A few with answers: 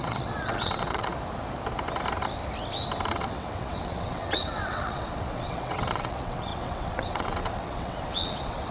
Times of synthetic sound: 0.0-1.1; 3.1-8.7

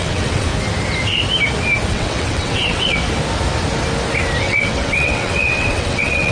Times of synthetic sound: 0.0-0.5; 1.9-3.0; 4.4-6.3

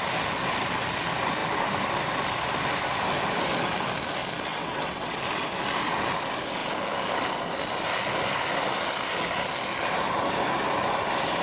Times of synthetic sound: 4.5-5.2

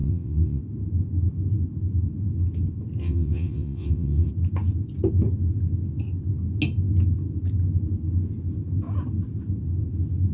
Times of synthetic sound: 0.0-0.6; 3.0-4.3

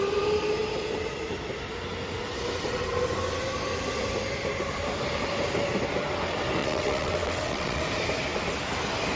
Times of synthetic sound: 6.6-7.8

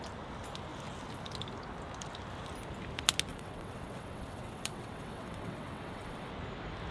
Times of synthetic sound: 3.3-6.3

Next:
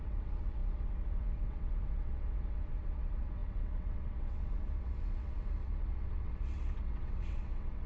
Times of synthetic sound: 0.0-7.9

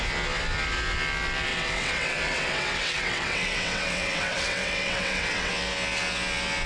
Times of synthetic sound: 1.5-5.5